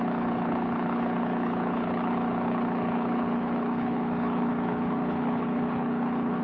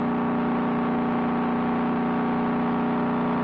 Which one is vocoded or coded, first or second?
first